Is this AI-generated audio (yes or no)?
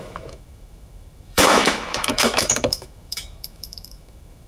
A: yes